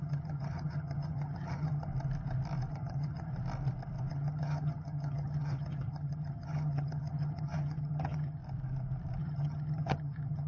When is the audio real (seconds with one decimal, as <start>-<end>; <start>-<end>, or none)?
1.9-2.7; 3.3-4.1; 8.4-9.2